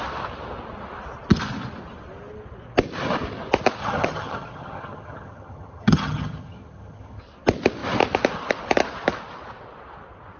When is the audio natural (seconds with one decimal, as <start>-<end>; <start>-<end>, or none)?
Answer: 0.0-3.8; 7.2-10.4